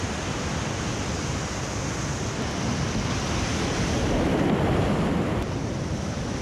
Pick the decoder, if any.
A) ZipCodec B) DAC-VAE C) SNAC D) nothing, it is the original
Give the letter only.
D